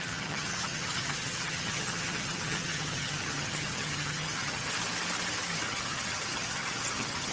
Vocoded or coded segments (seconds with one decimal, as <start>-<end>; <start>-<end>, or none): 0.0-4.7; 5.7-7.3